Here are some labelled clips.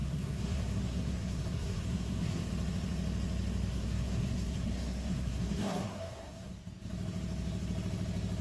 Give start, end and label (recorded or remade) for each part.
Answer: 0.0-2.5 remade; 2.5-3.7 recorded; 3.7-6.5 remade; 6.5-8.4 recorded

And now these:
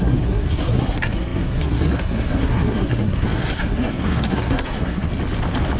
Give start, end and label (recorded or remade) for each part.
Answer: 0.0-5.1 remade; 5.1-5.8 recorded

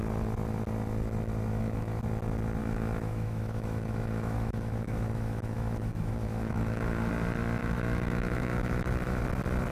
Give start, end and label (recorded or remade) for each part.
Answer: 0.0-1.5 recorded; 1.5-2.0 remade; 2.0-2.6 recorded; 2.6-7.1 remade; 7.1-7.6 recorded; 7.6-9.2 remade; 9.2-9.7 recorded